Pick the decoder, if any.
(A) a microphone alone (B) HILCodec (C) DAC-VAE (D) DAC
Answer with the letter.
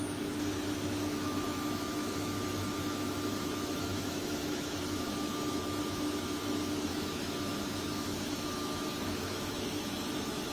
C